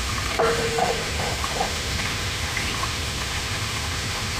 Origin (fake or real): fake